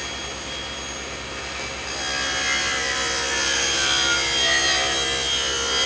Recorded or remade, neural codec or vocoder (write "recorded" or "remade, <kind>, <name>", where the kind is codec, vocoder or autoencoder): recorded